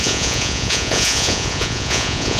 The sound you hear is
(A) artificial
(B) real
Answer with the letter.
A